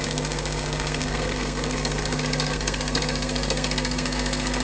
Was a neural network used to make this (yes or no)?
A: yes